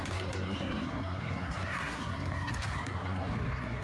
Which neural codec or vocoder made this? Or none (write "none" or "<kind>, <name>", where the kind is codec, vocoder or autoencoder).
codec, SNAC